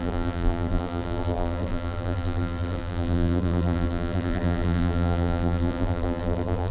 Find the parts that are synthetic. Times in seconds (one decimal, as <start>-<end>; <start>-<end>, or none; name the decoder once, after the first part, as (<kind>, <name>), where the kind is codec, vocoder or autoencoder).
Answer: 0.0-6.7 (vocoder, BigVGAN v2)